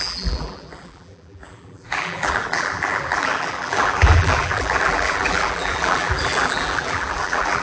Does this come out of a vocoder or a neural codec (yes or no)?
yes